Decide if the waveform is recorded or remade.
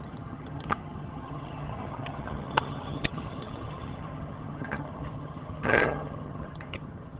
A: remade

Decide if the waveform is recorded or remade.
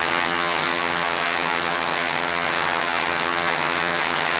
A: remade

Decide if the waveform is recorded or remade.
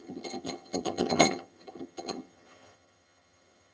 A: remade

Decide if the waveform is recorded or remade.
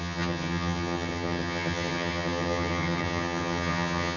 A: remade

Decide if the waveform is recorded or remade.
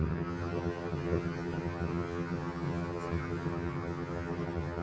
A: remade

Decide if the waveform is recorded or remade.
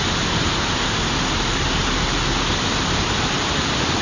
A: recorded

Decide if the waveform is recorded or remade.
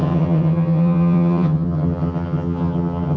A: remade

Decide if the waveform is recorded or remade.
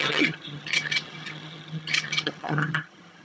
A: remade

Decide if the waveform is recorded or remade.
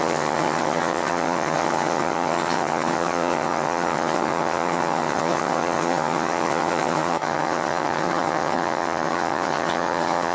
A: remade